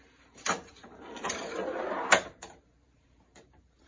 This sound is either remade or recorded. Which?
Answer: remade